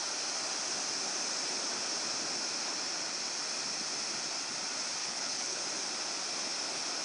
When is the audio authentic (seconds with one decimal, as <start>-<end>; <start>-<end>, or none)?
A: 0.0-5.0; 5.6-7.0